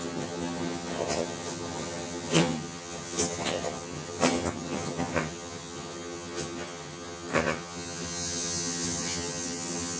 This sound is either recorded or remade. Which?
remade